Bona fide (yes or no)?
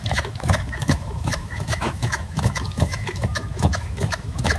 no